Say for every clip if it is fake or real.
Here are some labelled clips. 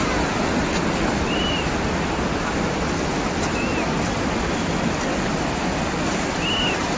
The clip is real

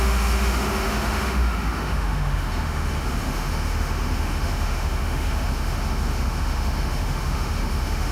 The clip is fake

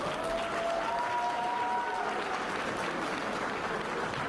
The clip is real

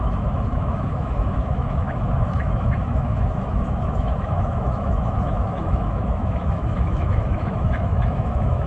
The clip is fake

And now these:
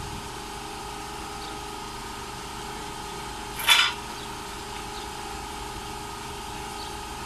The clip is real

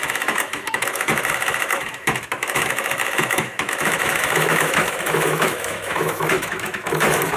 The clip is fake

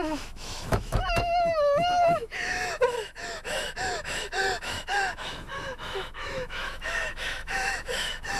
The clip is fake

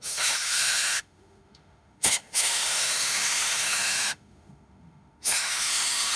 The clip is fake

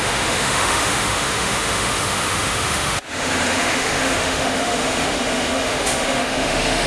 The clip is fake